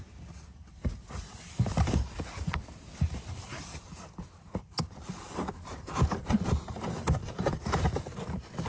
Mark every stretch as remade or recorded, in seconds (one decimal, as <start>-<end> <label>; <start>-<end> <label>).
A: 0.0-8.7 remade